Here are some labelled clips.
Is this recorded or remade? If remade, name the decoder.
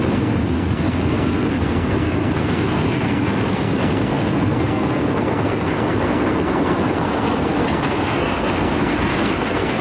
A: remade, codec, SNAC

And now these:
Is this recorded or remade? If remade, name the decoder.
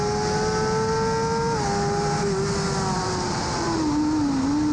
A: recorded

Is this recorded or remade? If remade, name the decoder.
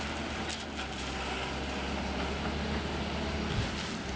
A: recorded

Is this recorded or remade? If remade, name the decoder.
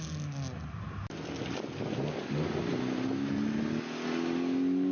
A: recorded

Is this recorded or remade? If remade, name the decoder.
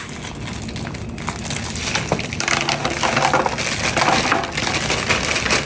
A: recorded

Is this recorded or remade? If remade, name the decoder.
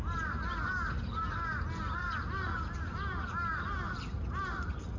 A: recorded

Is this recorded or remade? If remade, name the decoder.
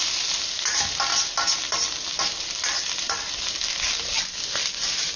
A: recorded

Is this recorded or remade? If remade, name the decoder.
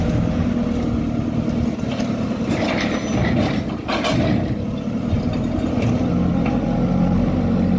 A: recorded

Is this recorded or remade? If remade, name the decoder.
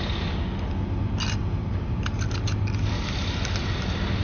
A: recorded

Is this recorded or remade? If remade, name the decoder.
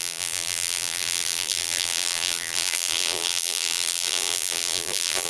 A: remade, vocoder, BigVGAN v2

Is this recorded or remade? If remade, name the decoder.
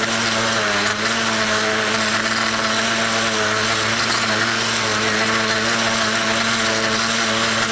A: recorded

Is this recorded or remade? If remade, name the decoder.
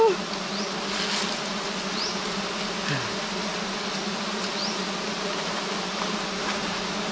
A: recorded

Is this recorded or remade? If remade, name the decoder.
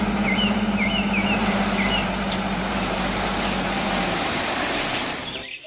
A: remade, vocoder, BigVGAN v2